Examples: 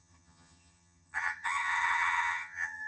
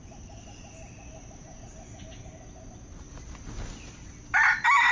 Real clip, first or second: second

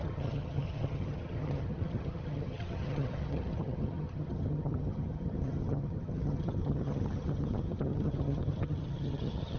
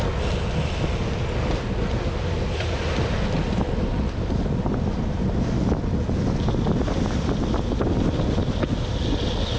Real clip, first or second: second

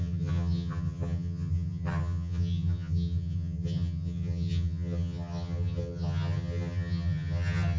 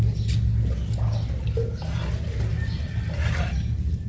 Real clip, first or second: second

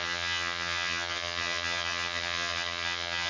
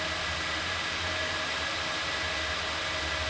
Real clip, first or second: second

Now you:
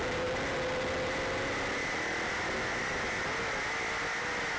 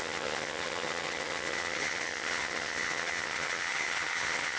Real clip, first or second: first